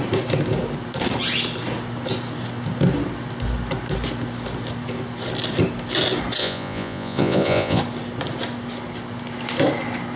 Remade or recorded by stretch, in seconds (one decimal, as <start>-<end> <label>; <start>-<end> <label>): 0.0-6.4 recorded; 6.4-7.8 remade; 7.8-10.2 recorded